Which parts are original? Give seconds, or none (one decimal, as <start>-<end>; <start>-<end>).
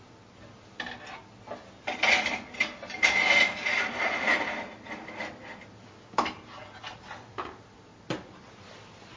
0.0-9.2